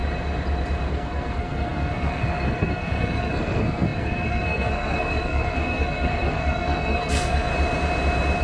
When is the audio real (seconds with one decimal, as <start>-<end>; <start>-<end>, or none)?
0.0-0.9; 7.5-8.4